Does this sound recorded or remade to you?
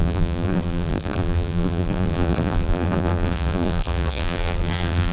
remade